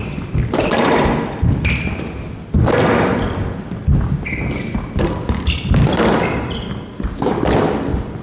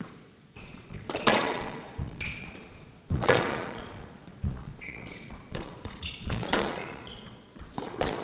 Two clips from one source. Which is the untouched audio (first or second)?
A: first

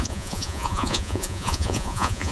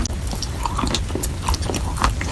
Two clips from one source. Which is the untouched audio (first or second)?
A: second